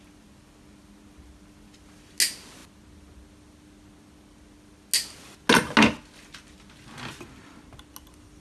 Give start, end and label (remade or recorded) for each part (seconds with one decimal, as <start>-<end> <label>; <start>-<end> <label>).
0.0-8.4 recorded